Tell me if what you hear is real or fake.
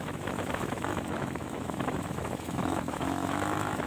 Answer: fake